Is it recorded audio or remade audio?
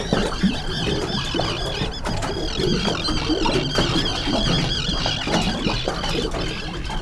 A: recorded